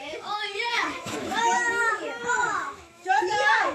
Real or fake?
fake